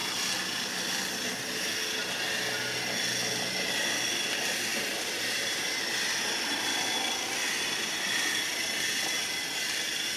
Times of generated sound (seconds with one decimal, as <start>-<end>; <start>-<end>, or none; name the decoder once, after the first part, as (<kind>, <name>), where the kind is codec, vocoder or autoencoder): 4.7-5.8 (vocoder, BigVGAN v2)

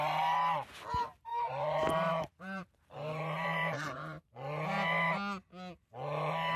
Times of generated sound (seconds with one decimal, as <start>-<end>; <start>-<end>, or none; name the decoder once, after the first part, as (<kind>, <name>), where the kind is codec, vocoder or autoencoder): 1.3-4.3 (vocoder, BigVGAN v2)

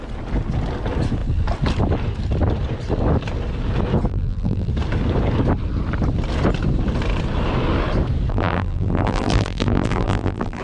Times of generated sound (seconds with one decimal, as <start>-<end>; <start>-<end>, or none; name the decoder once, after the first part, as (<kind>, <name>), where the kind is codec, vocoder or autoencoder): 4.1-4.7 (vocoder, BigVGAN v2); 8.3-10.6

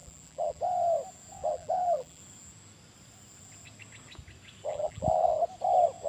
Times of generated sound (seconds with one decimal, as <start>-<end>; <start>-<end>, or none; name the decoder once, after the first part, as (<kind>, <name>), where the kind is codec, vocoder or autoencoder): 0.0-0.6 (vocoder, BigVGAN v2); 1.4-2.2; 4.7-5.4

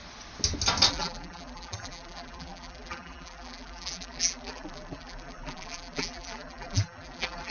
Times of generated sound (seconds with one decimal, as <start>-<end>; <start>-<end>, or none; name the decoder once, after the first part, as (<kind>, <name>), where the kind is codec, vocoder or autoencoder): 0.9-7.5 (vocoder, BigVGAN v2)

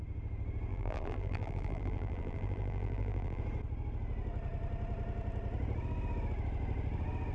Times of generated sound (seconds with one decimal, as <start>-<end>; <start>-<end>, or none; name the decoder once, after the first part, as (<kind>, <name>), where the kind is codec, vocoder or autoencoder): 0.7-3.4 (vocoder, BigVGAN v2)

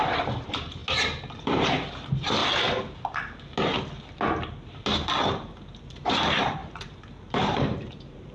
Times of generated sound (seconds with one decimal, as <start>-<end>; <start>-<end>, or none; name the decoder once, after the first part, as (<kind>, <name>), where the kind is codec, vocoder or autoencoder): 0.0-0.8 (vocoder, BigVGAN v2); 1.4-2.4; 5.2-8.3